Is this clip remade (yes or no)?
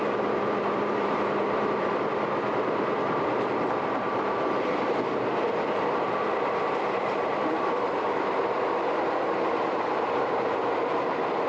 yes